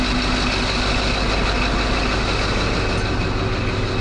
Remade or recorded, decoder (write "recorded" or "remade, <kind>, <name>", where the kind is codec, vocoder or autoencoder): recorded